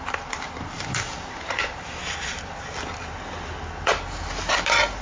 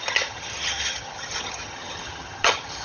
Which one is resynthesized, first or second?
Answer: second